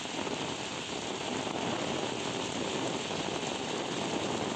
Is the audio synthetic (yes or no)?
no